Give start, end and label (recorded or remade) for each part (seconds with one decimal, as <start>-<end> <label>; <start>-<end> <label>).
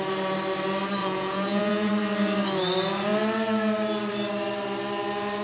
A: 0.0-1.0 recorded; 1.0-1.9 remade; 1.9-5.4 recorded